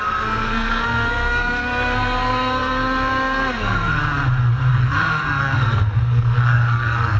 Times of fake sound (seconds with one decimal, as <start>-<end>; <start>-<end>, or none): 0.0-4.0; 4.7-7.2